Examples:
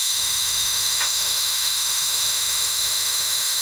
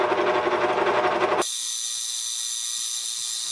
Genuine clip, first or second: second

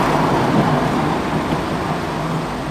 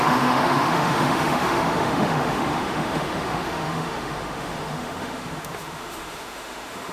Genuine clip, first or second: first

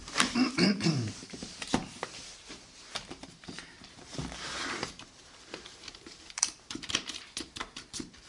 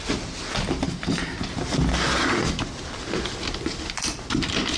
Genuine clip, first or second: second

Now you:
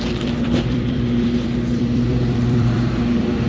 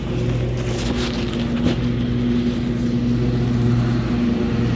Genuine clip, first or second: second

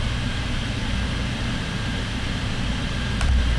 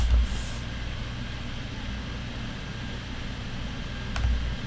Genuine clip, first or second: second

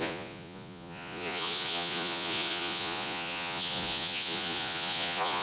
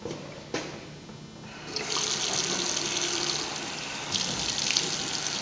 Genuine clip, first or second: second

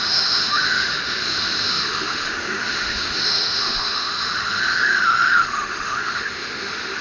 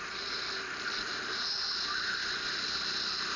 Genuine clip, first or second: second